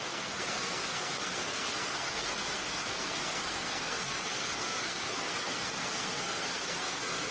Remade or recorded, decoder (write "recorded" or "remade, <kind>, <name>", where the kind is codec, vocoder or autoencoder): remade, codec, SNAC